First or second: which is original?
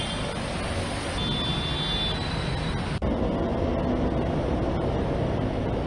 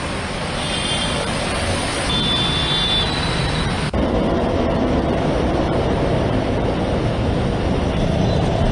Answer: first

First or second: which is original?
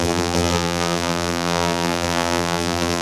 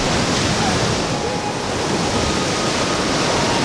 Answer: second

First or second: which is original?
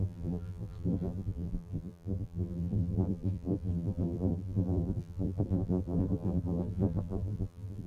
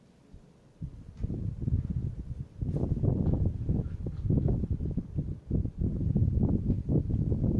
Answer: second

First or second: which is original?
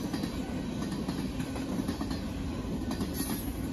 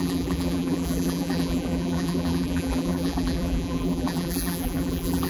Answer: first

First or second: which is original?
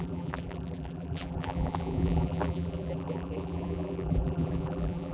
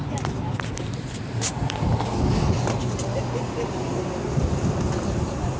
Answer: second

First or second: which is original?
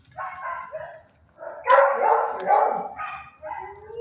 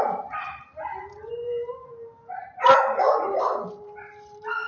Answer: first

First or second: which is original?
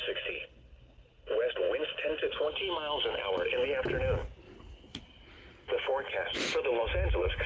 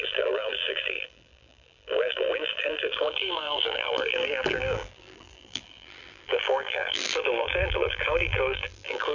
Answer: first